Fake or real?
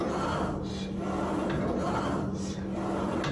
real